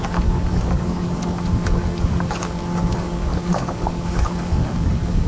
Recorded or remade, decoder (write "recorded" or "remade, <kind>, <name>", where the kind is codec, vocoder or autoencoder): remade, codec, DAC